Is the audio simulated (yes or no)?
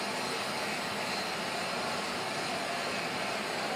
no